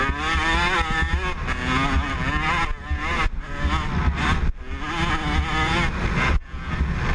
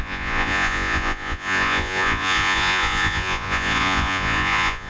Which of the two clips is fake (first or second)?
second